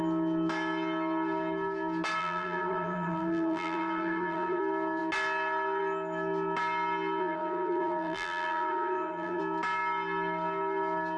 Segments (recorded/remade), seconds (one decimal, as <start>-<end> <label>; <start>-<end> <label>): 0.0-2.2 recorded; 2.2-4.6 remade; 4.6-7.2 recorded; 7.2-9.4 remade; 9.4-11.2 recorded